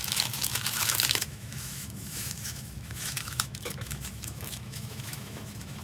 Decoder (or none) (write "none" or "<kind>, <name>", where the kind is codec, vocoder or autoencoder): autoencoder, DAC-VAE